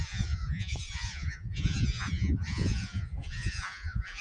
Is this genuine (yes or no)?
no